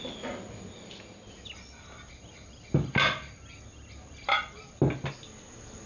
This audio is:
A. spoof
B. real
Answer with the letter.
B